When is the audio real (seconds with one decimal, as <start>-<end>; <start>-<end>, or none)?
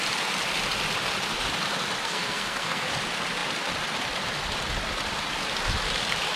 0.0-2.0; 2.9-6.4